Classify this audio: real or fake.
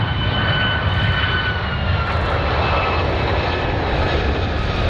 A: real